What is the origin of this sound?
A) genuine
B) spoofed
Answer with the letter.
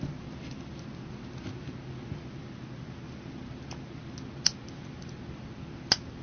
A